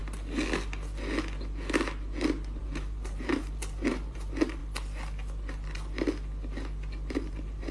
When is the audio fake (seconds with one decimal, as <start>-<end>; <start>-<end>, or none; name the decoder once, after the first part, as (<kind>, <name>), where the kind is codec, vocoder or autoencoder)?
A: 2.6-4.6 (vocoder, BigVGAN v2); 7.1-7.7